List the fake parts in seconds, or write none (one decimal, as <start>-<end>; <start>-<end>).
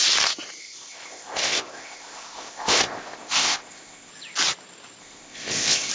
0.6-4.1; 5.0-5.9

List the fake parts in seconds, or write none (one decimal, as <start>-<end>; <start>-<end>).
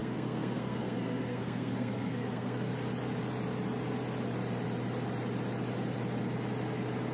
0.0-2.7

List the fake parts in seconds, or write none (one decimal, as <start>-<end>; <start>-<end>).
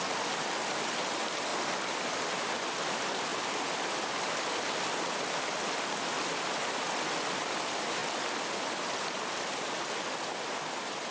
none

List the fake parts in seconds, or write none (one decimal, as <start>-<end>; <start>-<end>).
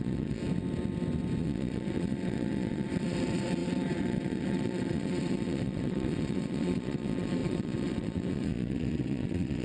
0.0-0.4; 1.4-9.6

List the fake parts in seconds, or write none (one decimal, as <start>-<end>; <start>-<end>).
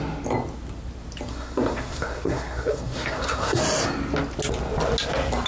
1.3-3.6